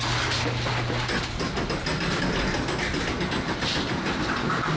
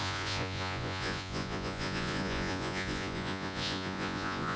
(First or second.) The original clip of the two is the first